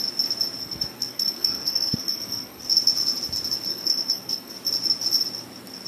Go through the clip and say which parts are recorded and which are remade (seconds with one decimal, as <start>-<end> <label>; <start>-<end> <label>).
0.0-0.6 recorded; 0.6-2.6 remade; 2.6-3.7 recorded; 3.7-4.5 remade; 4.5-5.9 recorded